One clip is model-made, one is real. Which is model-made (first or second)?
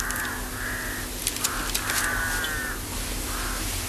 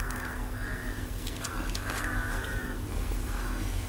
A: second